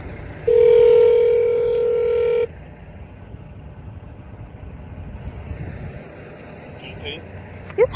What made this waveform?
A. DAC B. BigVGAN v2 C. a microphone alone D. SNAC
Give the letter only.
C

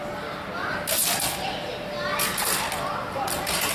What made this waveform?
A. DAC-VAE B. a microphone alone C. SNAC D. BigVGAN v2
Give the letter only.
B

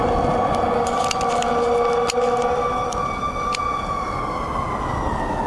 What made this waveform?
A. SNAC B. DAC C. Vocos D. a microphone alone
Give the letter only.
D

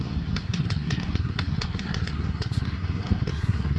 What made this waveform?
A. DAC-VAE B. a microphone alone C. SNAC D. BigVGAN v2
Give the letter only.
C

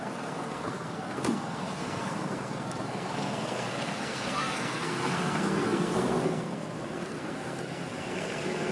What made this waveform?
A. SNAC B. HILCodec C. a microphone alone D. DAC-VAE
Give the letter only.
A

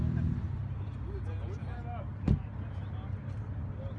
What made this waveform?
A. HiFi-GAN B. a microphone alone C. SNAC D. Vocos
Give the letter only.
B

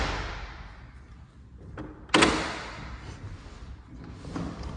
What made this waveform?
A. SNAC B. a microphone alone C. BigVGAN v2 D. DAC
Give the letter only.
B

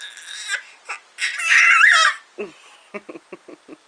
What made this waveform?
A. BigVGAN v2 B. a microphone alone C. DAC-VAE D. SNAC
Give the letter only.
B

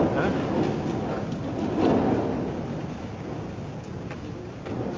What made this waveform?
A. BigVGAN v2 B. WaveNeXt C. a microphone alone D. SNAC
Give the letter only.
C